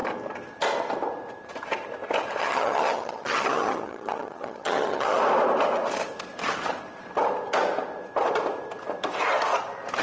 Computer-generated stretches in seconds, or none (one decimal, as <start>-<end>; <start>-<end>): 2.4-5.2